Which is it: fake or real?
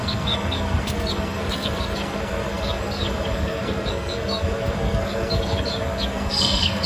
fake